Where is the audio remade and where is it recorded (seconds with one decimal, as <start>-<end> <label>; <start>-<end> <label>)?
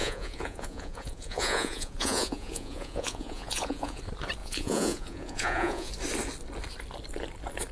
0.0-4.0 remade; 4.0-4.4 recorded; 4.4-5.9 remade; 5.9-7.7 recorded